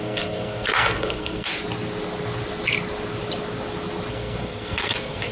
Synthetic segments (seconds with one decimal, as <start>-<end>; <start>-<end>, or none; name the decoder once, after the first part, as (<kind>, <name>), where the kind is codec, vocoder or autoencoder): 0.0-1.5 (codec, SNAC); 4.1-5.3